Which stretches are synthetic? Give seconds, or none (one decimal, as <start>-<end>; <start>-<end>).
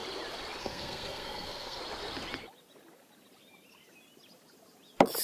0.6-1.8